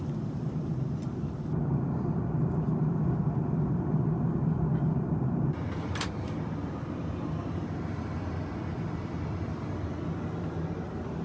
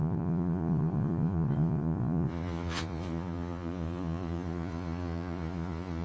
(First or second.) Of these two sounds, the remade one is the second